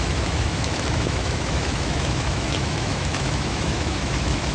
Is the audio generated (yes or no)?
yes